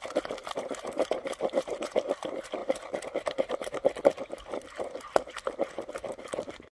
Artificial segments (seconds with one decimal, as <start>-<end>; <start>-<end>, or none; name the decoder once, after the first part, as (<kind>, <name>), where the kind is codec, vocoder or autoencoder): 0.4-2.0 (vocoder, BigVGAN v2)